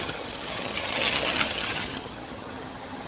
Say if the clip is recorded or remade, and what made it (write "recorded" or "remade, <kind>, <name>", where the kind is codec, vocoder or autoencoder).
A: remade, vocoder, HiFi-GAN